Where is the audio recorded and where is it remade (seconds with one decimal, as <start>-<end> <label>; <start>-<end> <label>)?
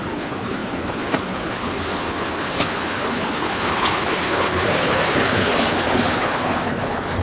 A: 0.0-7.2 remade